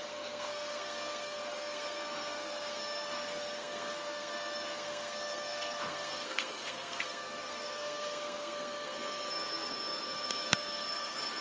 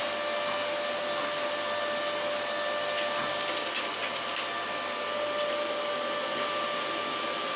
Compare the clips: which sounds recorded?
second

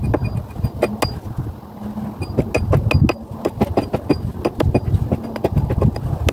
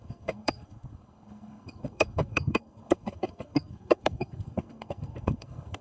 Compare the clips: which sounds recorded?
first